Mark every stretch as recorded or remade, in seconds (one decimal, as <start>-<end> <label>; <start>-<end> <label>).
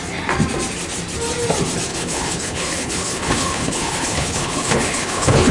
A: 0.0-1.9 recorded; 1.9-5.5 remade